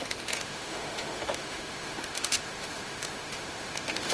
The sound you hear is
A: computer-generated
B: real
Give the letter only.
A